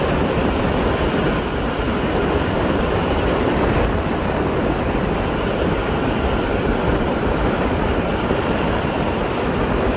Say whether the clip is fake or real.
fake